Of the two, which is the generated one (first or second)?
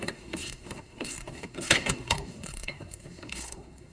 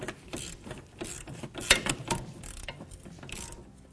first